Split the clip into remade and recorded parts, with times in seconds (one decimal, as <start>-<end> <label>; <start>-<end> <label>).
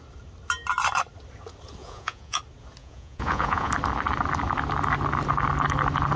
0.0-1.8 recorded; 1.8-2.4 remade; 2.4-2.8 recorded; 2.8-3.7 remade; 3.7-6.2 recorded